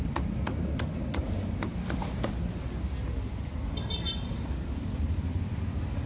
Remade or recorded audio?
recorded